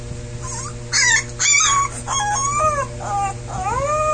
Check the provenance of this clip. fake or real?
real